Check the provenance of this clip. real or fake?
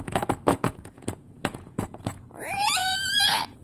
fake